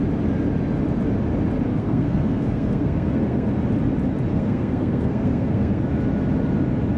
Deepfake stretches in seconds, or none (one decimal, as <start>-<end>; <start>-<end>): 1.7-3.5; 4.3-5.8